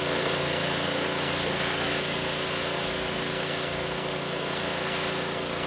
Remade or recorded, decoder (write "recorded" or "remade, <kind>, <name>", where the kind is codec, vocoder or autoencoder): remade, codec, SNAC